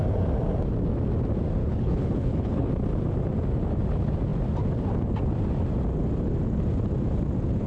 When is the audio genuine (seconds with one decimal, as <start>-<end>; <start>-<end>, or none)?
0.0-1.6; 2.7-7.7